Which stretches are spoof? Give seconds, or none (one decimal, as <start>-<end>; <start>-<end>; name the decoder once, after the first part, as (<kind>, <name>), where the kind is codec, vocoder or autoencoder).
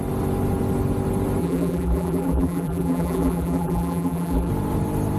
1.4-4.5 (vocoder, BigVGAN v2)